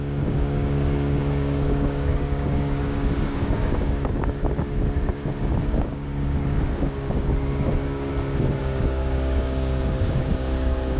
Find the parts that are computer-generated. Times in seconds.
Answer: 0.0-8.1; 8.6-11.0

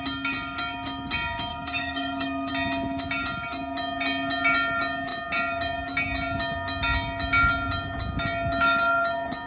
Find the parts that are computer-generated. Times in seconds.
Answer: 1.5-2.5

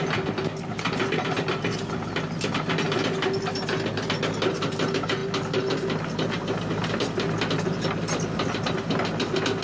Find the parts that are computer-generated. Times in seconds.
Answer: none

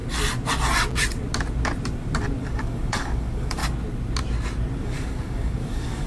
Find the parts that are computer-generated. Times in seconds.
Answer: 2.4-3.6; 4.8-6.1

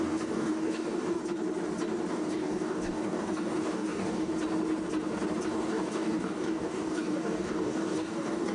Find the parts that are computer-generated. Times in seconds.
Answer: 0.0-1.2; 2.1-4.3; 5.5-8.5

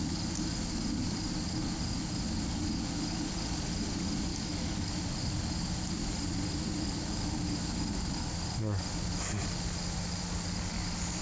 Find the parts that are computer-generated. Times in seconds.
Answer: 4.3-4.9

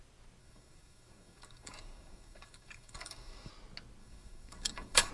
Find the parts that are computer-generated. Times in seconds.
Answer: 0.4-3.5; 4.0-5.1